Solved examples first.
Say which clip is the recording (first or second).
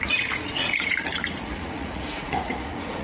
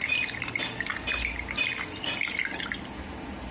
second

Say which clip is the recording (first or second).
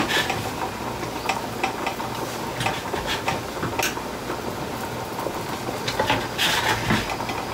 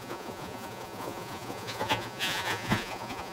first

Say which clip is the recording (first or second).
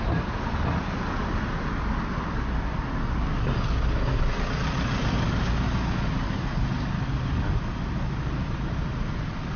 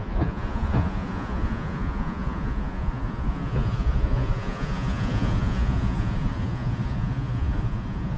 first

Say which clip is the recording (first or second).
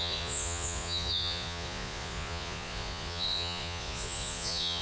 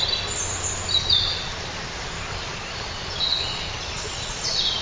second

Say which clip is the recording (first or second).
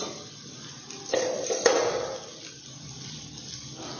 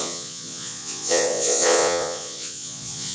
first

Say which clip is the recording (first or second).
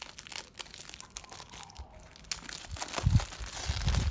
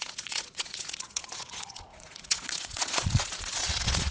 first